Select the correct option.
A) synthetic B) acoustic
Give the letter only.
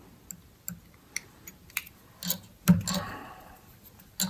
B